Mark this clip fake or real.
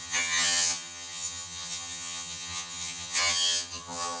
fake